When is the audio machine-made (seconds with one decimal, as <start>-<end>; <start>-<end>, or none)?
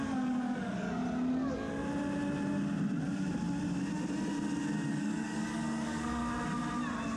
0.0-1.0; 4.9-6.2